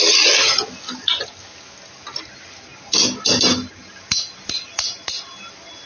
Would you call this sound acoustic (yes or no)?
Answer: yes